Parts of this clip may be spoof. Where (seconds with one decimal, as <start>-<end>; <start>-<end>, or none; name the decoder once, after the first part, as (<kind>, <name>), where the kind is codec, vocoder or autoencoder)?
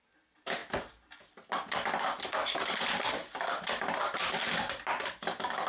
none